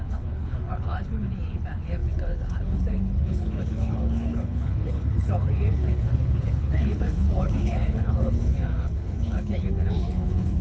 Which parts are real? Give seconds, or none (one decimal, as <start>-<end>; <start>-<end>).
none